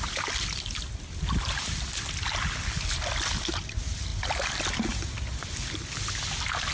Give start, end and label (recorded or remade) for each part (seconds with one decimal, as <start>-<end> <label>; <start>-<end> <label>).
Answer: 0.0-6.7 recorded